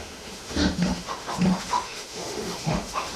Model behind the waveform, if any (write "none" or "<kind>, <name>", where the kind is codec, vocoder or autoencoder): autoencoder, DAC-VAE